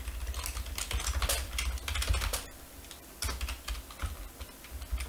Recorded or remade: recorded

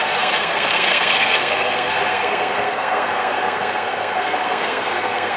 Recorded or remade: remade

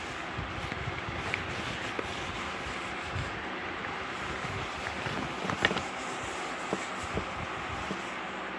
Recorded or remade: recorded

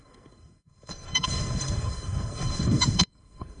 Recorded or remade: remade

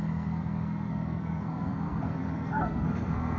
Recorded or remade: remade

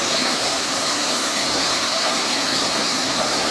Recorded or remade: remade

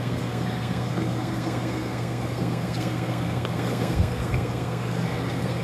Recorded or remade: remade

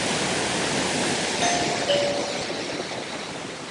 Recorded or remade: recorded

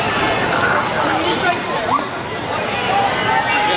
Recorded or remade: recorded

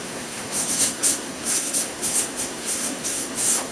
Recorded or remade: remade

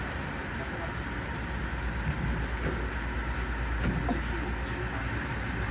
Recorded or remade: recorded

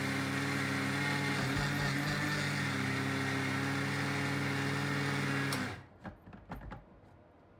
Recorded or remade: recorded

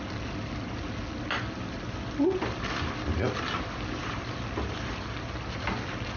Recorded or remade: recorded